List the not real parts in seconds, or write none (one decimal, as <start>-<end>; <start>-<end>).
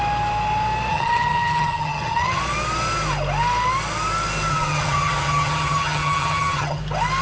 0.9-2.4; 4.5-6.8